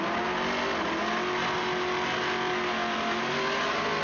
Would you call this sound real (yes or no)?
yes